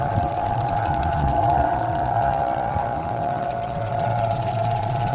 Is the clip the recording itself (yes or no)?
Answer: no